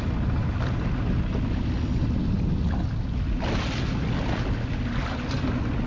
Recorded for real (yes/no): yes